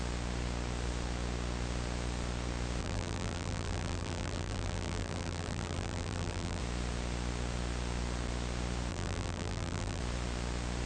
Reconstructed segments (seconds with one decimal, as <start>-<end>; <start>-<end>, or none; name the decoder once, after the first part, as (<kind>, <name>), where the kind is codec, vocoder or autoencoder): 2.8-6.6 (vocoder, BigVGAN v2); 8.9-10.0